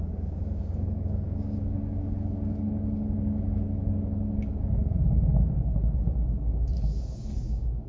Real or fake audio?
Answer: fake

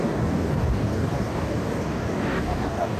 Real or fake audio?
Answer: fake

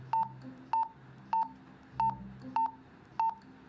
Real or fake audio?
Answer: real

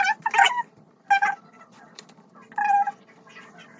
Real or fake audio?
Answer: real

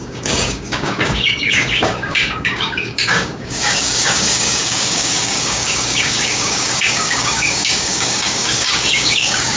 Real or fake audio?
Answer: fake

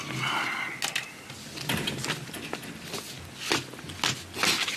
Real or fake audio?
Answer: real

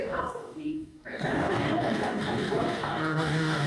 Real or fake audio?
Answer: fake